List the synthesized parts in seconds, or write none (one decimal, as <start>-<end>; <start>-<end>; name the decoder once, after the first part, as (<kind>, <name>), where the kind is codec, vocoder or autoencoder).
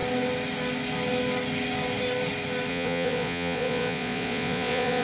2.7-5.0 (vocoder, Vocos)